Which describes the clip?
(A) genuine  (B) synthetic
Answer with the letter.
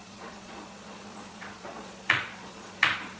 B